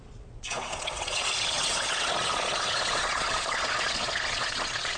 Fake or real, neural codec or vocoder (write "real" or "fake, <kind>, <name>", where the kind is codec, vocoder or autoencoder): fake, vocoder, Vocos